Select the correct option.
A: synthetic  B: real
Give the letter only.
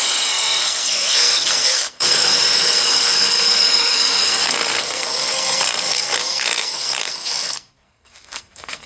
A